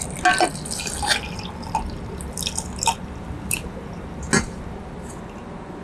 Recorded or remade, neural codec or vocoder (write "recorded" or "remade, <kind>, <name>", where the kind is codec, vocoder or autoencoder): recorded